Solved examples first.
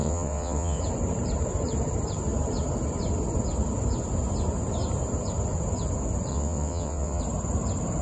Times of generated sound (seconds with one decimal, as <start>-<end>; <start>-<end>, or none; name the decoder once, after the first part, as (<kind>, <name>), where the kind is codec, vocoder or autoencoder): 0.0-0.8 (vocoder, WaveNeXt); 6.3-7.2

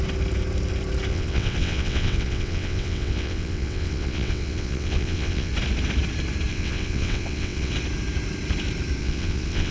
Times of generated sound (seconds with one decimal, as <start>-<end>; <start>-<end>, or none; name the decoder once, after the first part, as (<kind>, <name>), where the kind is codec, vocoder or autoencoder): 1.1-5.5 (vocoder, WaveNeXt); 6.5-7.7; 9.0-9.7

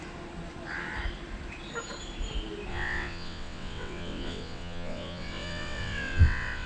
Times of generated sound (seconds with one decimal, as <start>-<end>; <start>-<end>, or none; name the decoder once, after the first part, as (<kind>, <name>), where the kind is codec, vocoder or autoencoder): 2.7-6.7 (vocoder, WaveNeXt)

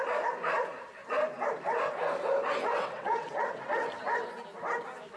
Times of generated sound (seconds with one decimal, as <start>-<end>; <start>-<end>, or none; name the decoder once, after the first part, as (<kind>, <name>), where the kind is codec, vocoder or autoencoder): 2.6-3.9 (vocoder, WaveNeXt)